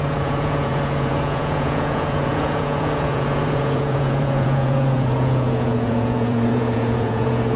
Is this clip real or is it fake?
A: fake